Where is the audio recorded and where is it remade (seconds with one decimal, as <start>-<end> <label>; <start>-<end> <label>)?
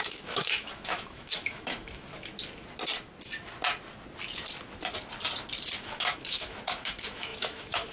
0.0-2.3 remade; 2.3-5.8 recorded; 5.8-7.9 remade